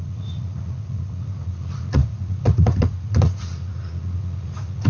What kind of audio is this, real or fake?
fake